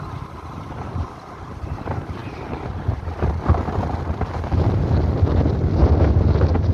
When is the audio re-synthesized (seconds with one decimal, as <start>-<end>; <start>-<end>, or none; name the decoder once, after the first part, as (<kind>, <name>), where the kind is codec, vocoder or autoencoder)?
0.0-2.2 (vocoder, BigVGAN v2); 5.9-6.7